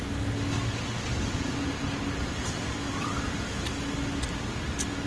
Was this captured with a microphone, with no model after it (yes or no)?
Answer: yes